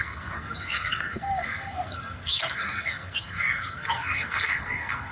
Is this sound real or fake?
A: fake